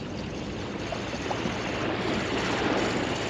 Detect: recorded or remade recorded